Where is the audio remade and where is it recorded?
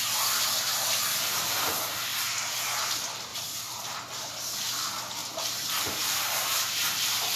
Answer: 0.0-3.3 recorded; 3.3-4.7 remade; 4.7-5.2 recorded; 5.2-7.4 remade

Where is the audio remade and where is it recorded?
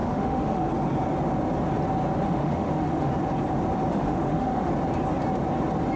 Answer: 0.0-0.7 remade; 0.7-2.2 recorded; 2.2-3.1 remade; 3.1-3.9 recorded; 3.9-4.7 remade; 4.7-6.0 recorded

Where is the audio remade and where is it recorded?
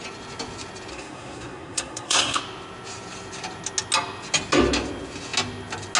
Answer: 0.0-0.9 recorded; 0.9-2.4 remade; 2.4-6.0 recorded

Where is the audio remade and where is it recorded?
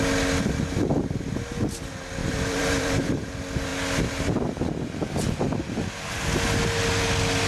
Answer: 0.0-2.2 recorded; 2.2-3.2 remade; 3.2-7.5 recorded